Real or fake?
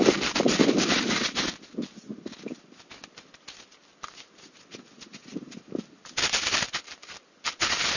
real